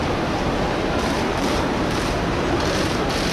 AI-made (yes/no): yes